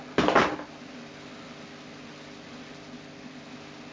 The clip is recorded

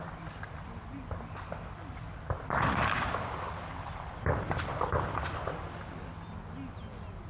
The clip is recorded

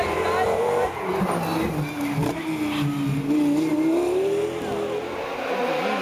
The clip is recorded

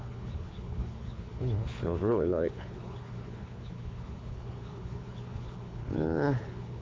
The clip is remade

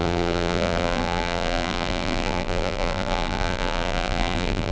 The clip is remade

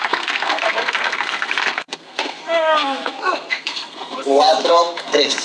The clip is remade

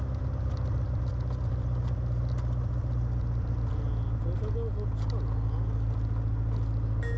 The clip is recorded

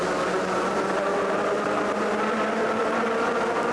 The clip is recorded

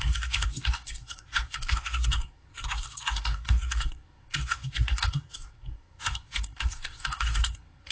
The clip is remade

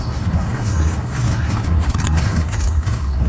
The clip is remade